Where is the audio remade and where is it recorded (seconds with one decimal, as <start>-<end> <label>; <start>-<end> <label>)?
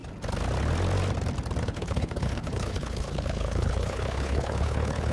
0.0-1.6 recorded; 1.6-5.1 remade